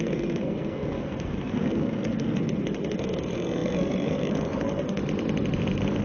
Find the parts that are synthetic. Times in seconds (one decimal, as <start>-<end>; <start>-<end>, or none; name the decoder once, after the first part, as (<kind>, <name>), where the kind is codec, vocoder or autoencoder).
0.0-5.0 (codec, SNAC)